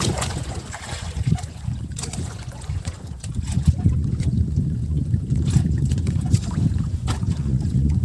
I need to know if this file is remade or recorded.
remade